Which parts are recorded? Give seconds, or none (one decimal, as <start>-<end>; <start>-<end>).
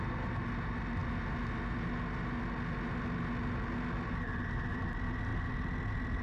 0.0-6.2